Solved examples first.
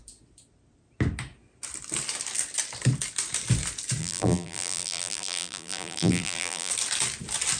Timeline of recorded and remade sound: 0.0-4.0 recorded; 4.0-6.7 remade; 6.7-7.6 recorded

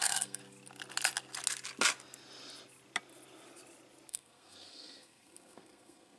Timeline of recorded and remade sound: 0.0-0.4 remade; 0.4-4.1 recorded; 4.1-6.2 remade

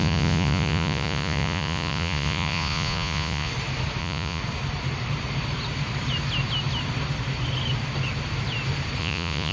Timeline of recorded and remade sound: 0.0-3.5 remade; 3.5-4.0 recorded; 4.0-4.4 remade; 4.4-9.0 recorded; 9.0-9.5 remade

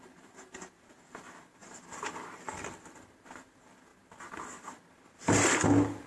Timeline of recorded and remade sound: 0.0-6.1 recorded

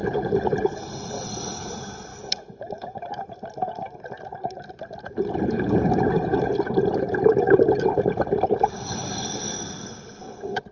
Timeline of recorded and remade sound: 0.0-2.1 recorded; 2.1-3.0 remade; 3.0-10.7 recorded

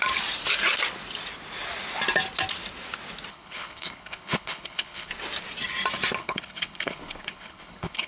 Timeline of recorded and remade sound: 0.0-3.3 recorded; 3.3-5.1 remade; 5.1-6.2 recorded; 6.2-8.1 remade

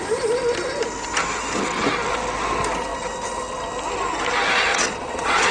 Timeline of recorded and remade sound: 0.0-4.7 recorded; 4.7-5.5 remade